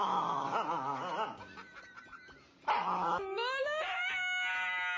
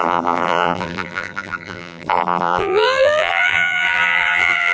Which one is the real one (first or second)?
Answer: first